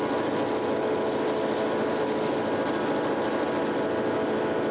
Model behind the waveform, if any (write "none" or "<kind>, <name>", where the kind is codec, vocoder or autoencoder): none